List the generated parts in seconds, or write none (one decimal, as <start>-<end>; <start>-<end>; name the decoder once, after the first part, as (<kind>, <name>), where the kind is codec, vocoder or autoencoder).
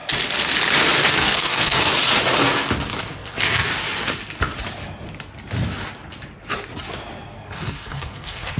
1.1-1.9 (codec, SNAC); 3.0-3.7; 7.2-8.6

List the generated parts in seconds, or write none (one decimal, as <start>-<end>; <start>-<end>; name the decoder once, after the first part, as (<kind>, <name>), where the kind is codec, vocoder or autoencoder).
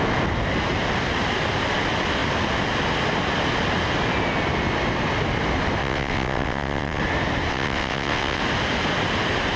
5.8-7.0 (vocoder, WaveNeXt); 7.5-8.4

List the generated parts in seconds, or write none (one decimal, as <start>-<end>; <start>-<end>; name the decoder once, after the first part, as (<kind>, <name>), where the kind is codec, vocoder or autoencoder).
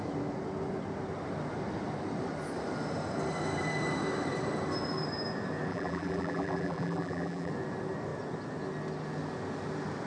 5.7-7.5 (vocoder, BigVGAN v2)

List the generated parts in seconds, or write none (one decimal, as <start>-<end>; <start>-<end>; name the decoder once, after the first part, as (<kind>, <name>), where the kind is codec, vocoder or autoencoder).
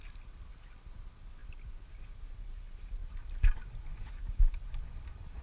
none